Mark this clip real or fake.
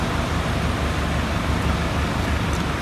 real